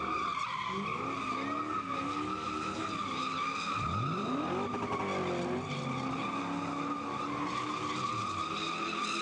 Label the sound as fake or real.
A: real